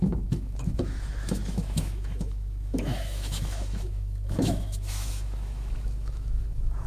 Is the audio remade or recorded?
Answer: remade